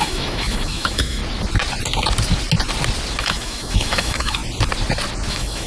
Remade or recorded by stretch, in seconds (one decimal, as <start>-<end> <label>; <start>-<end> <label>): 0.0-1.2 remade; 1.2-3.2 recorded; 3.2-4.4 remade; 4.4-5.3 recorded; 5.3-5.7 remade

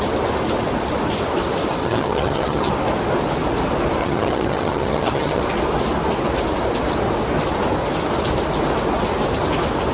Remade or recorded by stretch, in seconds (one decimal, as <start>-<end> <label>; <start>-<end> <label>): 0.0-1.8 recorded; 1.8-2.7 remade; 2.7-4.0 recorded; 4.0-5.4 remade; 5.4-9.9 recorded

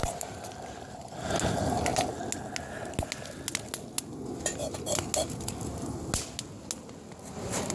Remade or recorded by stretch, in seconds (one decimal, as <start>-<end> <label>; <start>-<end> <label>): 0.0-1.0 remade; 1.0-7.7 recorded

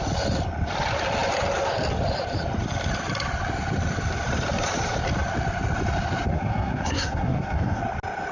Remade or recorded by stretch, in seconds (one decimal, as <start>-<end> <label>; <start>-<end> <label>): 0.0-6.3 recorded; 6.3-7.8 remade; 7.8-8.3 recorded

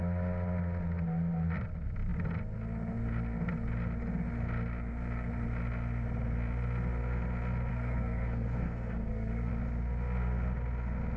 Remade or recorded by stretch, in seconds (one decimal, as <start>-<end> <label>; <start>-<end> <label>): 0.0-7.7 recorded; 7.7-9.5 remade; 9.5-11.2 recorded

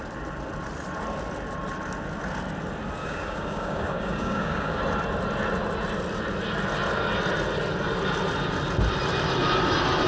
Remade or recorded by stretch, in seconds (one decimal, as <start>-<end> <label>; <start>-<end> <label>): 0.0-3.0 recorded; 3.0-4.8 remade; 4.8-10.1 recorded